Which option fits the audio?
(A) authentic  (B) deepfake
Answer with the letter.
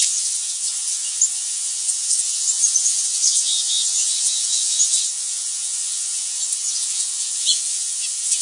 B